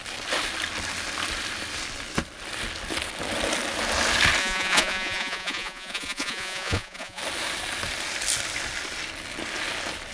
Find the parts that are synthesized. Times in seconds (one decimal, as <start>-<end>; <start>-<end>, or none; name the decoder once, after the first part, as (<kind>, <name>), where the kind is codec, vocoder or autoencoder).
4.4-7.2 (vocoder, Vocos)